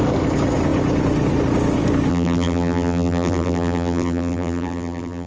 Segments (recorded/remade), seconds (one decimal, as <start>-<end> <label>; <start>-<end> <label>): 0.0-2.1 recorded; 2.1-5.3 remade